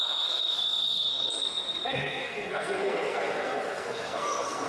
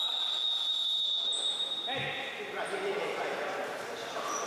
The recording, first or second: second